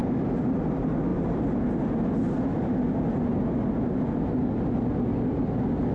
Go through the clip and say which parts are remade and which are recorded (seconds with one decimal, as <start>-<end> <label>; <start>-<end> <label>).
0.0-5.9 recorded